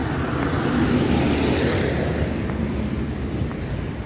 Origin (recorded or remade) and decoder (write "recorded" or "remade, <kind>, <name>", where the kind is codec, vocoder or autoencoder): recorded